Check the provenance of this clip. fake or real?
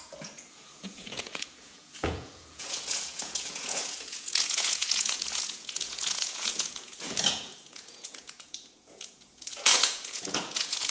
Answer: fake